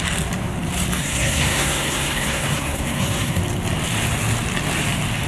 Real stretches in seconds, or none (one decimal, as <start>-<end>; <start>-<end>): 0.0-1.0; 3.4-5.3